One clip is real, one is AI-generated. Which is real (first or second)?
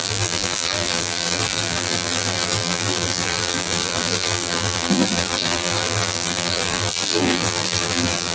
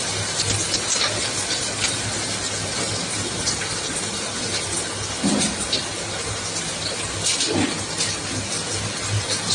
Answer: second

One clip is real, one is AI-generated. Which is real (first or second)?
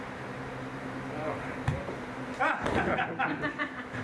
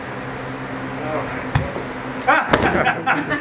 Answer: second